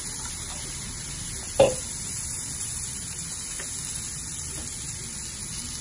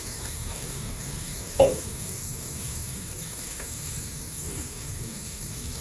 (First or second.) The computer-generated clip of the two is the second